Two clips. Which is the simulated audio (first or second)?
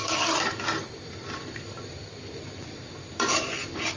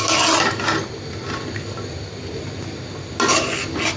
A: first